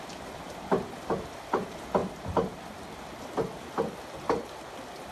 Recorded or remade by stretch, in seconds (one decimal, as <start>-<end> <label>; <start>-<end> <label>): 0.0-5.1 recorded